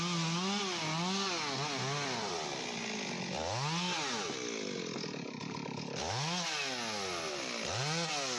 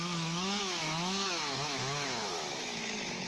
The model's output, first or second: second